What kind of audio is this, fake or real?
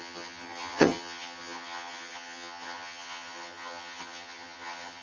fake